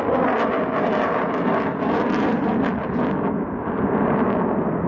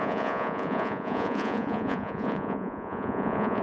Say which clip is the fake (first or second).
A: second